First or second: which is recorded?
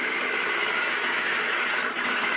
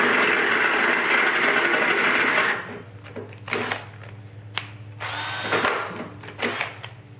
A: second